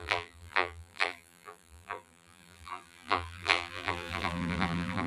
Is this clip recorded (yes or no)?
no